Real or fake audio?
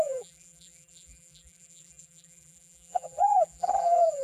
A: fake